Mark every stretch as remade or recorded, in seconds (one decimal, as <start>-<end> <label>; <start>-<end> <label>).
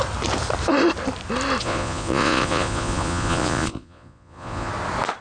0.0-1.6 recorded; 1.6-4.7 remade; 4.7-5.2 recorded